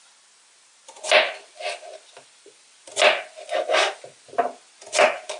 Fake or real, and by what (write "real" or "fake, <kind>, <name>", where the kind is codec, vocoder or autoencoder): real